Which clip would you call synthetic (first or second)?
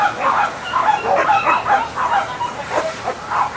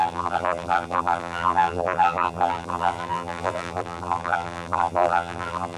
second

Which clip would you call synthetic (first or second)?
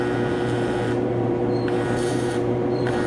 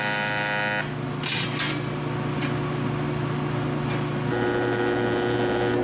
first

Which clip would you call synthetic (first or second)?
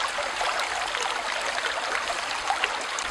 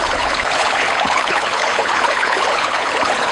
second